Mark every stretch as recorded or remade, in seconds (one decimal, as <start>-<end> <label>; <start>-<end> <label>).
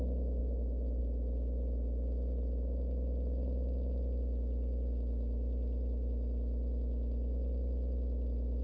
0.0-8.6 recorded